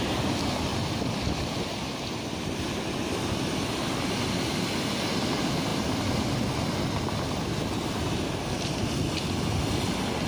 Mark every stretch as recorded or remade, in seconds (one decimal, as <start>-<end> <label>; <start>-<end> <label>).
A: 0.0-10.3 recorded